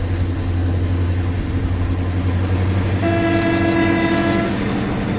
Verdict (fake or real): real